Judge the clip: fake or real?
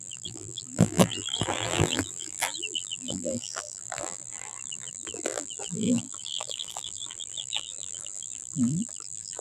fake